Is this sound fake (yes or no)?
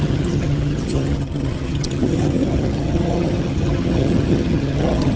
yes